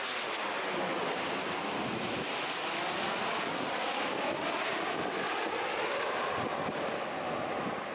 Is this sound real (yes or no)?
yes